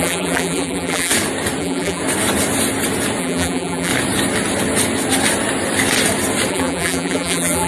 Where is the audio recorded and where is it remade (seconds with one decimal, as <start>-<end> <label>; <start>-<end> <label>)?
0.0-1.1 remade; 1.1-1.6 recorded; 1.6-2.0 remade; 2.0-3.2 recorded; 3.2-3.9 remade; 3.9-6.5 recorded; 6.5-7.7 remade